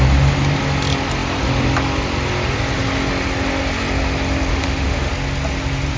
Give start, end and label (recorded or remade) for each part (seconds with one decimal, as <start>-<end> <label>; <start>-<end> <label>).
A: 0.0-4.5 recorded; 4.5-5.1 remade; 5.1-6.0 recorded